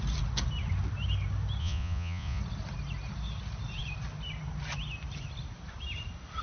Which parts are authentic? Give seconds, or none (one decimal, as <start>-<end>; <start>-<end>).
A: 0.0-1.6; 2.4-6.4